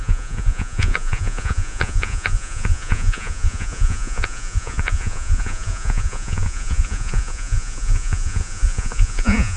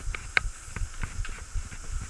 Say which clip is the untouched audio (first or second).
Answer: second